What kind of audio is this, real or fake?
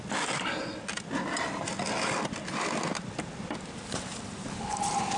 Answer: real